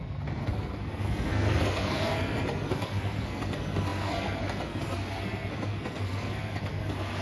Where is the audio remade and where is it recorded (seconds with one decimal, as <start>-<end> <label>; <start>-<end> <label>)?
0.0-7.2 remade